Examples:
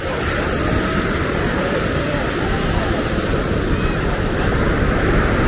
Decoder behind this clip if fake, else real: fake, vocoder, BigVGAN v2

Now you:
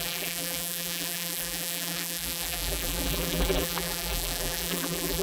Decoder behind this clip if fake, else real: fake, vocoder, BigVGAN v2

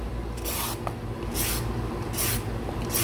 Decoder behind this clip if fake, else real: real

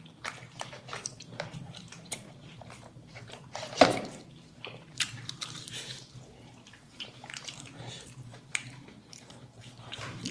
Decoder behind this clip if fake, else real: fake, vocoder, BigVGAN v2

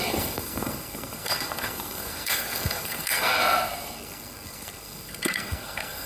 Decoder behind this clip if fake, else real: fake, codec, SNAC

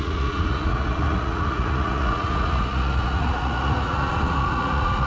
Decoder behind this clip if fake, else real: fake, vocoder, Vocos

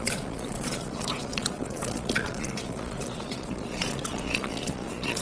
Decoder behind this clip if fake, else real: fake, vocoder, Vocos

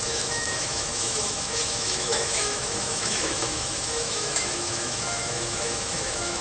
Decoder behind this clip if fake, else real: fake, autoencoder, DAC-VAE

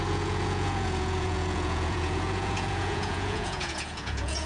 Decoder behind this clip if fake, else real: fake, vocoder, Vocos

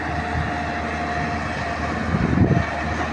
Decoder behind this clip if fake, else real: real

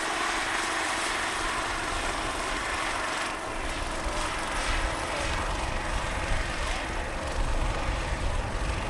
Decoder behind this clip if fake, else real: fake, vocoder, BigVGAN v2